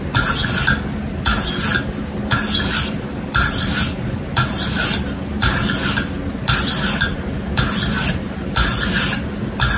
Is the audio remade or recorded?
recorded